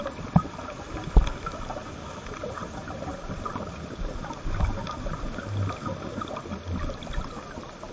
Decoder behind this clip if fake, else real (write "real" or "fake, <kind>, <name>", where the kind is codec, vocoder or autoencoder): real